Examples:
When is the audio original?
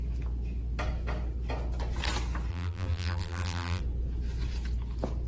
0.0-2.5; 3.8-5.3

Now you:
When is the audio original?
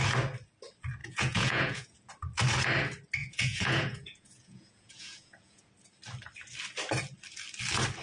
0.0-1.0; 2.1-3.2; 5.7-8.0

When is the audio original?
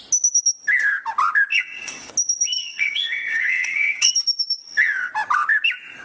0.0-1.5; 2.1-2.6; 4.1-4.6; 5.1-6.0